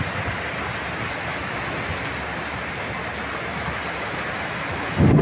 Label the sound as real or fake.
real